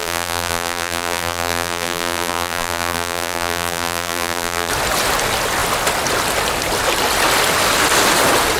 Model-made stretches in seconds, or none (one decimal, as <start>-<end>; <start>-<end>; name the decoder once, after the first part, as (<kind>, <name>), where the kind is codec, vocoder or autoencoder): 0.0-4.7 (vocoder, BigVGAN v2)